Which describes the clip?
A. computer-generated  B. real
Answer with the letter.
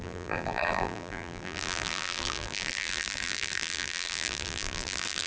A